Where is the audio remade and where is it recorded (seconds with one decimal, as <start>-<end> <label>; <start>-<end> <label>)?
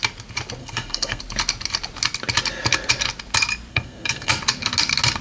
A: 0.0-0.6 recorded; 0.6-1.2 remade; 1.2-3.7 recorded; 3.7-4.3 remade; 4.3-5.2 recorded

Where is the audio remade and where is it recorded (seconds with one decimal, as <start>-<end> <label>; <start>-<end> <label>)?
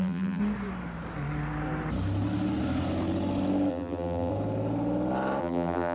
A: 0.0-0.4 remade; 0.4-3.7 recorded; 3.7-4.3 remade; 4.3-5.4 recorded; 5.4-5.9 remade